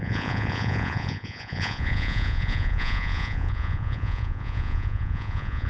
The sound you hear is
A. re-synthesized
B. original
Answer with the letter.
A